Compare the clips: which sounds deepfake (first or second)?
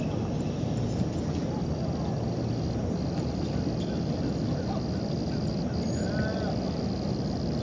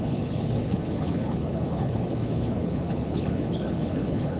second